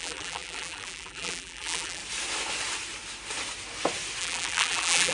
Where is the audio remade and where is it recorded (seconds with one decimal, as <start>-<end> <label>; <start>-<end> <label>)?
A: 0.0-2.0 remade; 2.0-4.2 recorded; 4.2-5.1 remade